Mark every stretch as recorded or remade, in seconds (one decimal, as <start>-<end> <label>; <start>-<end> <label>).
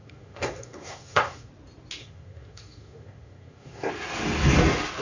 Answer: 0.0-1.5 remade; 1.5-2.0 recorded; 2.0-3.9 remade; 3.9-5.0 recorded